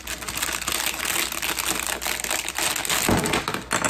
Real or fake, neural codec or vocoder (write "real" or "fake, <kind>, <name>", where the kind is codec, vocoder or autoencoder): real